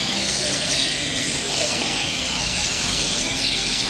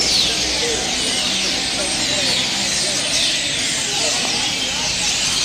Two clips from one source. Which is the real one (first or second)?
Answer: second